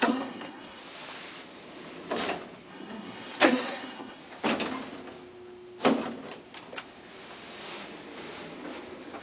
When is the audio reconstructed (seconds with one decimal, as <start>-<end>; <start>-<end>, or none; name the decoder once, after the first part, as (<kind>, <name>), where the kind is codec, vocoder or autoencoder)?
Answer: 0.0-0.8 (codec, SNAC); 2.7-4.2